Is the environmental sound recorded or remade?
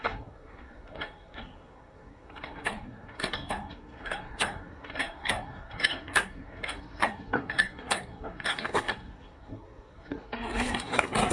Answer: remade